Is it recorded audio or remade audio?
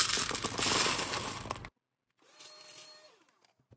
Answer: recorded